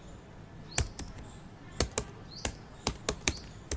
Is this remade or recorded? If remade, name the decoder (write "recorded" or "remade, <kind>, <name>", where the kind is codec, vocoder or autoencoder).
recorded